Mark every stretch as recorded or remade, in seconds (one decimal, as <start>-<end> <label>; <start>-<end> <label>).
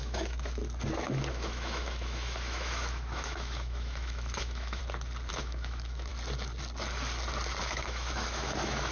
0.0-0.6 remade; 0.6-1.3 recorded; 1.3-4.8 remade; 4.8-5.3 recorded; 5.3-6.1 remade; 6.1-7.6 recorded; 7.6-8.9 remade